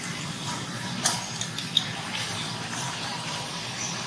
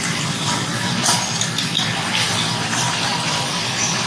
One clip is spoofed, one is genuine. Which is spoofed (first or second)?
first